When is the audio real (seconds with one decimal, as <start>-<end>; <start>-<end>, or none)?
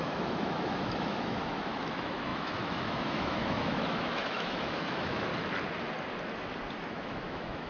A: 5.3-6.9